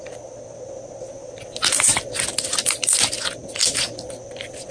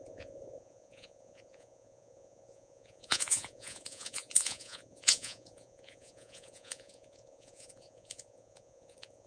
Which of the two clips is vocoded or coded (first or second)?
second